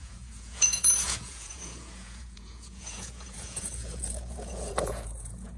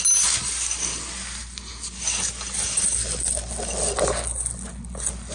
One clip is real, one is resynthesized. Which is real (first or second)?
second